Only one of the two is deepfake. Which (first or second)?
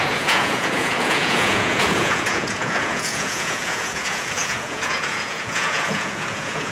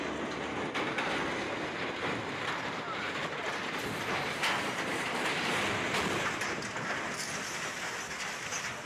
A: first